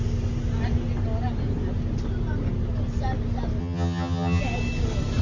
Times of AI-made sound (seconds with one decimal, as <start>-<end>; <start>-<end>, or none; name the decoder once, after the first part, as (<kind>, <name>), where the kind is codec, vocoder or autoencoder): 3.6-4.4 (vocoder, HiFi-GAN)